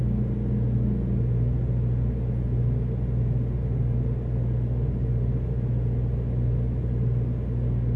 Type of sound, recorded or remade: recorded